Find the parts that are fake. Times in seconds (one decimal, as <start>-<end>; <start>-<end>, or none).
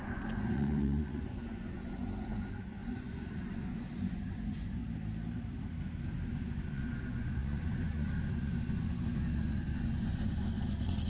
0.0-4.8; 6.3-11.1